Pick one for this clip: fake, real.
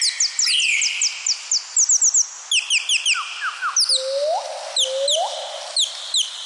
real